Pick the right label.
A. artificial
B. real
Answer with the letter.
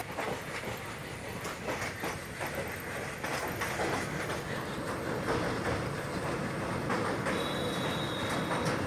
B